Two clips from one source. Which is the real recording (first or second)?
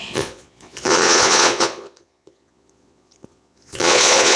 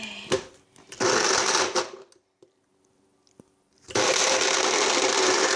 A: second